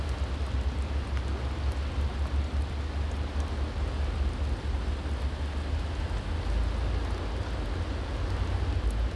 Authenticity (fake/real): real